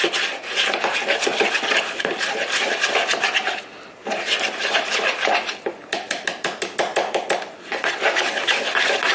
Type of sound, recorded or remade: recorded